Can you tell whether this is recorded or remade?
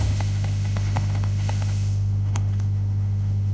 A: remade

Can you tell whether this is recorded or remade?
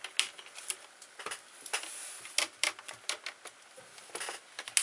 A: recorded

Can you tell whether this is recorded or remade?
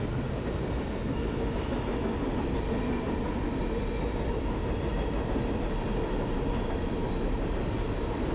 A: recorded